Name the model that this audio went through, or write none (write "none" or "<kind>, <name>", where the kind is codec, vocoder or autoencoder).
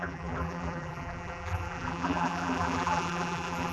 vocoder, BigVGAN v2